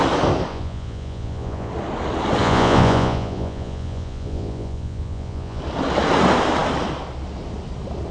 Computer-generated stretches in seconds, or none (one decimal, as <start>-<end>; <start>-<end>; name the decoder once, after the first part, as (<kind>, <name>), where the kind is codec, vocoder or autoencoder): 0.5-1.7 (vocoder, Vocos); 2.4-5.6